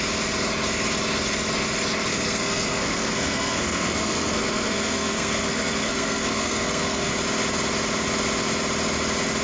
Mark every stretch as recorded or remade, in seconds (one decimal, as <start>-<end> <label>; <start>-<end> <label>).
0.0-2.1 recorded; 2.1-7.1 remade; 7.1-9.4 recorded